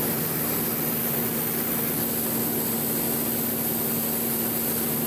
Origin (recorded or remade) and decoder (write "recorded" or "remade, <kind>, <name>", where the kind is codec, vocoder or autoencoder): recorded